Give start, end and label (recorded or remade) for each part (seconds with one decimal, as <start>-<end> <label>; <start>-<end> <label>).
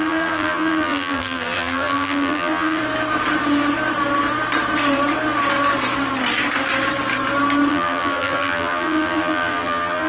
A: 0.0-2.8 remade; 2.8-7.7 recorded; 7.7-10.1 remade